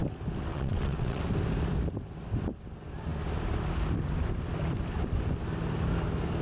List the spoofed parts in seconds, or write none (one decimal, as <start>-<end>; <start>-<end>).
0.5-1.2

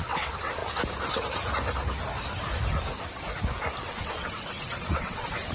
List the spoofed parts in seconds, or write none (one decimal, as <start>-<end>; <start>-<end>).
0.0-0.6; 3.9-5.5

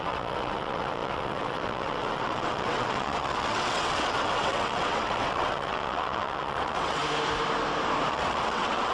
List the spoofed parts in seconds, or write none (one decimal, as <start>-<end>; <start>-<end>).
0.0-7.0; 8.1-8.9

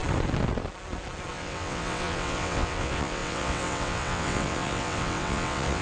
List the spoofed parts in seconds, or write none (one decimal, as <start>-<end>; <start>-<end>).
1.3-5.8

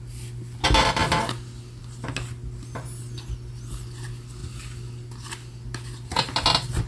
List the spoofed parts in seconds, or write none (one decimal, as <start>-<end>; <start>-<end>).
none

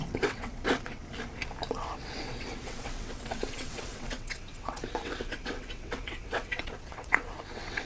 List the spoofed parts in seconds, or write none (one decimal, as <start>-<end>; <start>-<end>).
0.0-1.0; 1.7-7.9

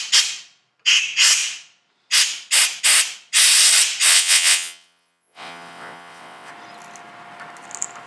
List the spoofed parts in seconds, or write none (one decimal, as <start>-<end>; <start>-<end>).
4.1-6.5